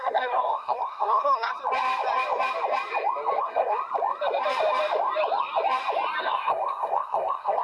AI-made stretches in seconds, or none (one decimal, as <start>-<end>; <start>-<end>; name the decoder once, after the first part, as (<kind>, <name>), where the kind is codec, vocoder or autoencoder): 0.0-1.5 (codec, SNAC); 3.4-3.8; 6.2-7.6